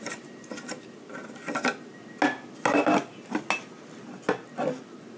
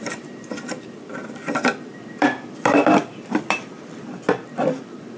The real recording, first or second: first